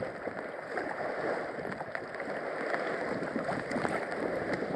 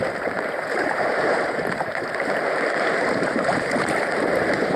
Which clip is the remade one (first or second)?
second